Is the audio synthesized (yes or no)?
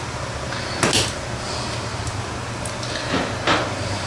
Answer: no